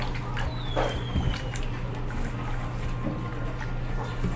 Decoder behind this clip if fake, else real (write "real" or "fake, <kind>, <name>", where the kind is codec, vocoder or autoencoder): real